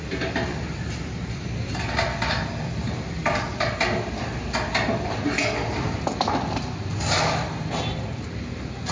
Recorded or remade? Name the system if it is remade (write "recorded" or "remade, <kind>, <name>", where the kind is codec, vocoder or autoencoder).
recorded